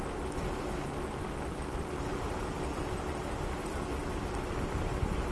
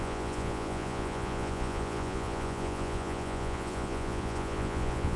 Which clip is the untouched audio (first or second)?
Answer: first